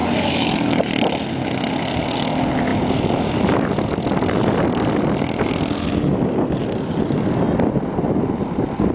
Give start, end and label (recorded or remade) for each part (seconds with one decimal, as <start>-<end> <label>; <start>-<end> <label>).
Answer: 0.0-0.9 remade; 0.9-8.9 recorded